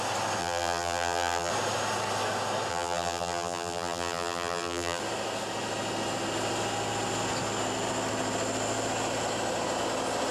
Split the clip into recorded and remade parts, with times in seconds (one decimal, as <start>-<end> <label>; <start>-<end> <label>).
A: 0.0-0.4 recorded; 0.4-1.5 remade; 1.5-2.7 recorded; 2.7-5.0 remade; 5.0-10.3 recorded